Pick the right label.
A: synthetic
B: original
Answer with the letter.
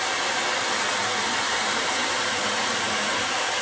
B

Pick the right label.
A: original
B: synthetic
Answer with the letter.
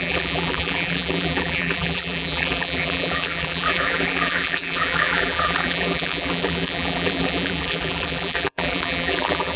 B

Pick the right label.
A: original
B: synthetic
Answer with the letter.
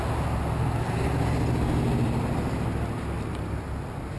A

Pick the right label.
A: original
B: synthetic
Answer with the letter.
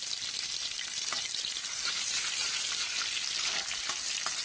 A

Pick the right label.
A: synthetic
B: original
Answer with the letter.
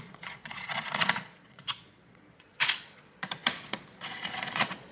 A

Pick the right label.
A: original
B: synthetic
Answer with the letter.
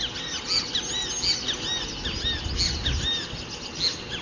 A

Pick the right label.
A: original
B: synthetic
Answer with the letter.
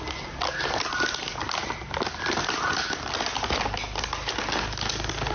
A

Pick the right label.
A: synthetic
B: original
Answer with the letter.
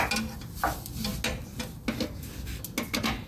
B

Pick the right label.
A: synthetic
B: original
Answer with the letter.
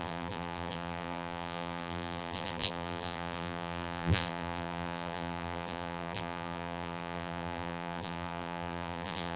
A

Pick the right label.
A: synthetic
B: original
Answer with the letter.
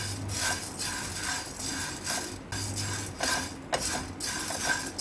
B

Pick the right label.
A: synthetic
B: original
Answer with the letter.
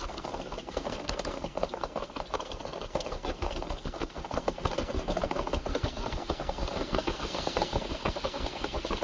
A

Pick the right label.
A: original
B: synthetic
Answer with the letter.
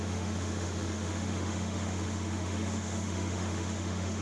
B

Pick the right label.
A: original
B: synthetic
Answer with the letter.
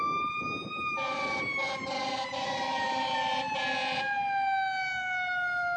A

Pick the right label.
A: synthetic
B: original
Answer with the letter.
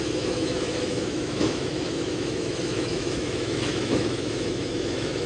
A